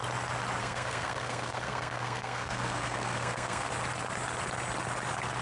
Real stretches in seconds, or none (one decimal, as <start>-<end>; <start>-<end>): 0.0-0.6; 3.7-5.4